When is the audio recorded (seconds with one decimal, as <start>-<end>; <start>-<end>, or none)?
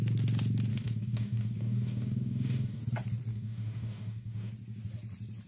0.0-0.7; 2.8-3.3; 4.5-5.5